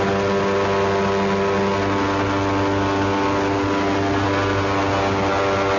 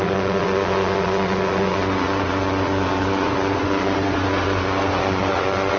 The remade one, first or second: second